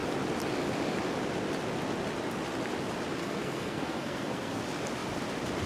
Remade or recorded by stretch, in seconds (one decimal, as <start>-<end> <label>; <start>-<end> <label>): 0.0-3.2 recorded; 3.2-4.6 remade; 4.6-5.7 recorded